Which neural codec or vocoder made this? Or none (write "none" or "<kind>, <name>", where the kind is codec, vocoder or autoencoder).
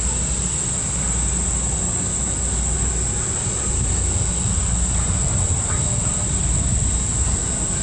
none